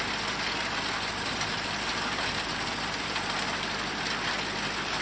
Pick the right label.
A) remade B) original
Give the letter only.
B